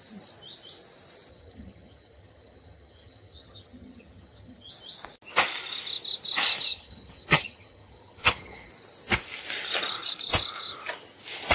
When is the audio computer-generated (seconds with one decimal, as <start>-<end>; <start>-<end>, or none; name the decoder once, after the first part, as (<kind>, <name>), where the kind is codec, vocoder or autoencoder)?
1.3-4.7 (vocoder, HiFi-GAN); 6.7-8.7